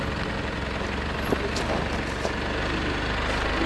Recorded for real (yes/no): yes